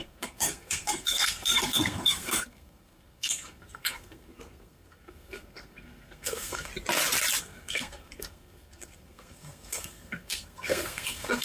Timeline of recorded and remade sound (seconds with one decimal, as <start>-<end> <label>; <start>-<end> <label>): 0.0-6.7 remade; 6.7-7.4 recorded; 7.4-11.4 remade